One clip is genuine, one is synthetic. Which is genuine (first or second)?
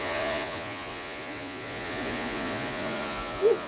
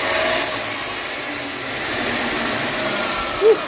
second